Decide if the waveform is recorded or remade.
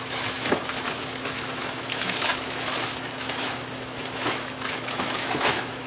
remade